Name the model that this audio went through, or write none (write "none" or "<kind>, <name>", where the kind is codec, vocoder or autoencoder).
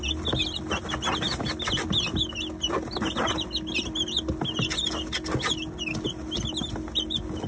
none